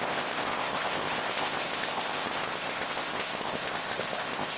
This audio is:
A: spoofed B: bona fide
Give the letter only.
A